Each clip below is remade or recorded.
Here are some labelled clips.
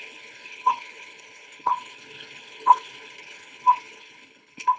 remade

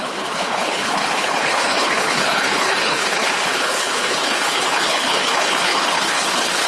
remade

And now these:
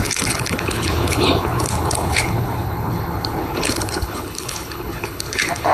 remade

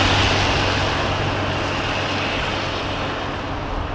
recorded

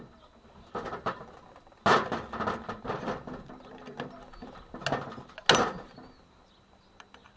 recorded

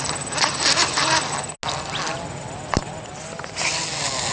recorded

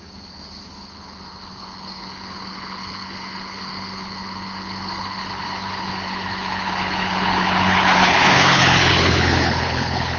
remade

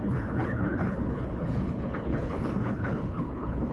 remade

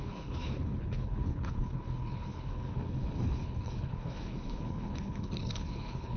remade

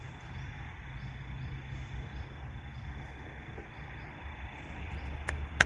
recorded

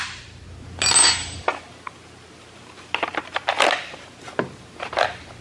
recorded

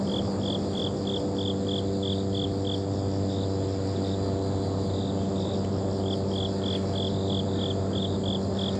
recorded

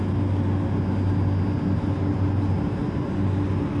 recorded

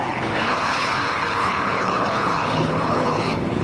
remade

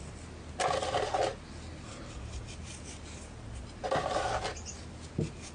recorded